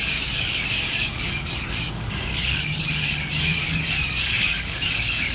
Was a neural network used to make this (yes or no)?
yes